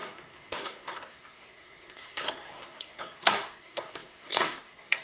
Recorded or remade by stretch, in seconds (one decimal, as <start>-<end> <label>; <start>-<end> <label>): 0.0-5.0 remade